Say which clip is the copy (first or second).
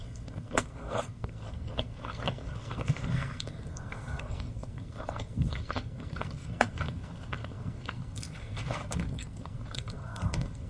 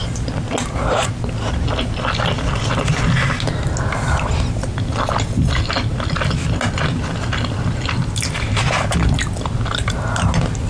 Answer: first